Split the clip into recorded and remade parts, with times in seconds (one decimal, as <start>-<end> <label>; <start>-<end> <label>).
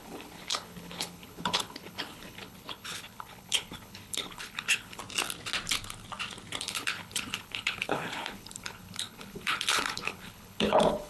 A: 0.0-5.0 remade; 5.0-6.6 recorded; 6.6-11.1 remade